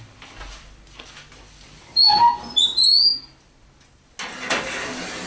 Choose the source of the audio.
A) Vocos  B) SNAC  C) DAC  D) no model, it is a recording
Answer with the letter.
D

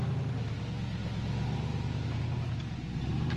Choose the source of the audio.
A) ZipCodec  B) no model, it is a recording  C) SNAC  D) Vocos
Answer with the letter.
B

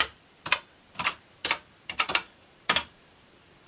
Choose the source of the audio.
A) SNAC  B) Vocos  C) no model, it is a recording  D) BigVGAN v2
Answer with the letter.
D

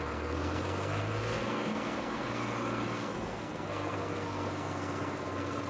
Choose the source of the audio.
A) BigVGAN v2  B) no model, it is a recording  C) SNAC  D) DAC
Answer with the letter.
C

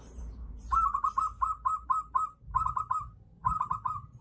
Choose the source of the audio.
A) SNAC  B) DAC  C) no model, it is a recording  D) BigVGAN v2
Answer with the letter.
D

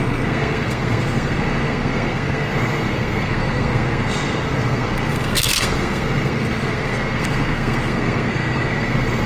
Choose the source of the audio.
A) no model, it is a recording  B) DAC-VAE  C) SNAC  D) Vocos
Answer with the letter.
C